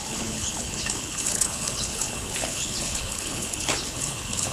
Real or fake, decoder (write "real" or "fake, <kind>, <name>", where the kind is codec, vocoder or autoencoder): fake, codec, HILCodec